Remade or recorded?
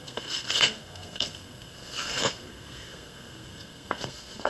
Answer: remade